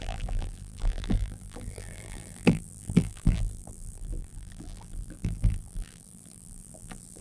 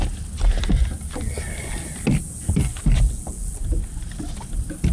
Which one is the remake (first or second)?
first